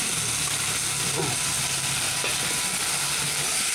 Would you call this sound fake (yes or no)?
no